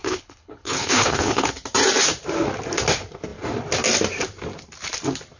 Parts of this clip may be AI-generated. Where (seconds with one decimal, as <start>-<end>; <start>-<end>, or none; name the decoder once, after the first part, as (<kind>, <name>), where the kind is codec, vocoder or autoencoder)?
0.0-1.5 (codec, HILCodec)